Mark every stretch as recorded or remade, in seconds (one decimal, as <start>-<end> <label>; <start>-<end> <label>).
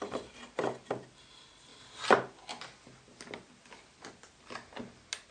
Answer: 0.0-5.3 recorded